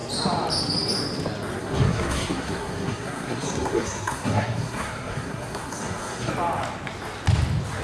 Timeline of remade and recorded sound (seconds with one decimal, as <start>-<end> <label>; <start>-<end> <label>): 0.0-1.6 recorded; 1.6-6.3 remade; 6.3-7.8 recorded